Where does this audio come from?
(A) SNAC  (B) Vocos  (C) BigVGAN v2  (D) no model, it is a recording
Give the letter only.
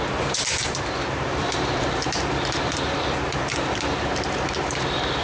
C